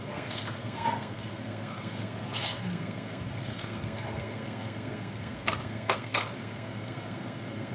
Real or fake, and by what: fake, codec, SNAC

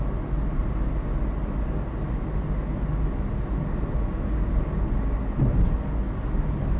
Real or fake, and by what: real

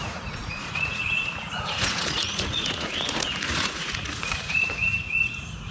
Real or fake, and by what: fake, vocoder, Vocos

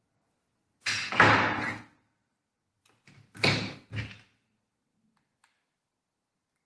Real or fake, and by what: real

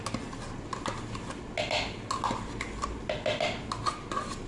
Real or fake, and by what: real